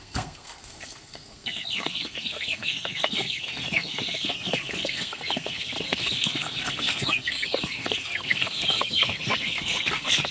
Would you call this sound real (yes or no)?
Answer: no